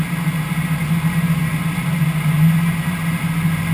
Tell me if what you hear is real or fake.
real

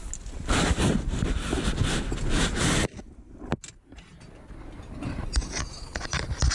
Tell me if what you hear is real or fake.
real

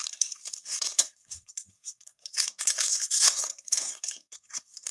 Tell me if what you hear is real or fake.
fake